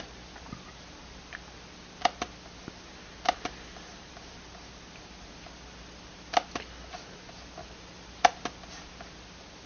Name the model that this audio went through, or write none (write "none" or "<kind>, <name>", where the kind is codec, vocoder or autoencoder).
none